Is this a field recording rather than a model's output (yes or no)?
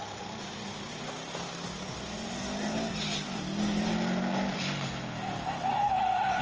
yes